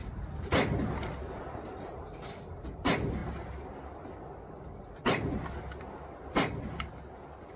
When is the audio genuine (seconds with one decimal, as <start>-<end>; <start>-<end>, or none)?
0.0-7.6